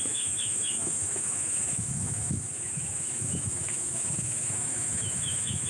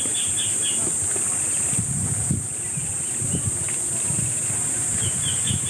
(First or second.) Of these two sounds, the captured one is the second